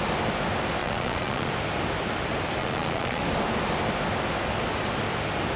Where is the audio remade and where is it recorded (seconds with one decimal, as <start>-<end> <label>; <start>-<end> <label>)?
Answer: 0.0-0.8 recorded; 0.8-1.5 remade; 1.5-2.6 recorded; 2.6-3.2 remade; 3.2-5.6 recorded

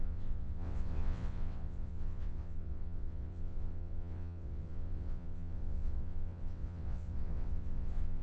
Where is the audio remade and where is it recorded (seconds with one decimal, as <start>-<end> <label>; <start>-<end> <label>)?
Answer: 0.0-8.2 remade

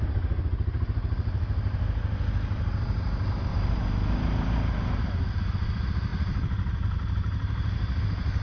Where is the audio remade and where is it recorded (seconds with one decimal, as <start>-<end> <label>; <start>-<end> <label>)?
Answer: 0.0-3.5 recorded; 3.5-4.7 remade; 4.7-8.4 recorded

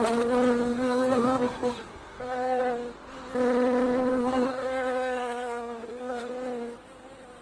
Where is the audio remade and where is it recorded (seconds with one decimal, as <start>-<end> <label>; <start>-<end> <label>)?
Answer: 0.0-0.7 recorded; 0.7-2.6 remade; 2.6-4.1 recorded; 4.1-6.3 remade; 6.3-7.4 recorded

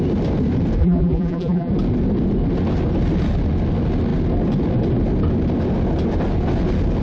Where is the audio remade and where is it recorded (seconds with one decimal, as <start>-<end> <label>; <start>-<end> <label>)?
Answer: 0.0-0.8 recorded; 0.8-1.7 remade; 1.7-7.0 recorded

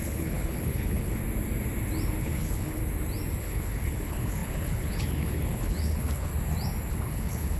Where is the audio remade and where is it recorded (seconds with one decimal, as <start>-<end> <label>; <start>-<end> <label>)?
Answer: 0.0-1.2 remade; 1.2-2.2 recorded; 2.2-2.8 remade; 2.8-3.4 recorded; 3.4-6.3 remade; 6.3-6.9 recorded; 6.9-7.6 remade